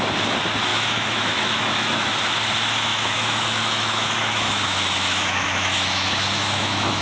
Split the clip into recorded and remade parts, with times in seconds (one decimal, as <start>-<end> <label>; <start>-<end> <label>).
0.0-0.7 recorded; 0.7-2.2 remade; 2.2-2.9 recorded; 2.9-7.0 remade